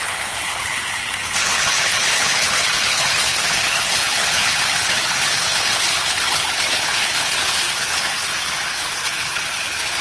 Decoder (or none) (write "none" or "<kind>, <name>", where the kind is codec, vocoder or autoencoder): codec, HILCodec